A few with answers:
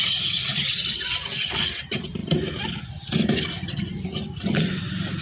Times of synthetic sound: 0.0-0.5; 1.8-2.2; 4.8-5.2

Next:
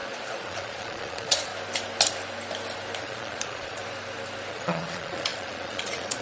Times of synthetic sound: 0.0-1.5; 3.0-3.8; 4.5-6.2

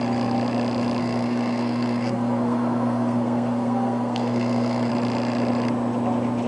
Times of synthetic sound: 1.0-4.9

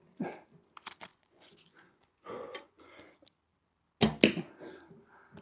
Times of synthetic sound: 1.1-3.1

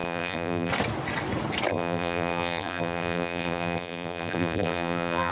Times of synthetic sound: 0.0-0.7; 1.7-5.3

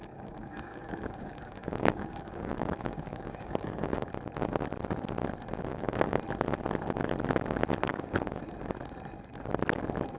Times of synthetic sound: 0.0-4.1; 5.7-6.2; 7.9-8.4

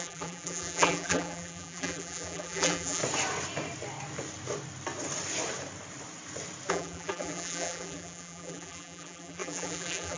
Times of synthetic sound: 0.0-3.0; 6.7-10.2

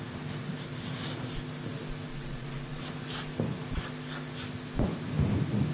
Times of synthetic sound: 2.1-2.8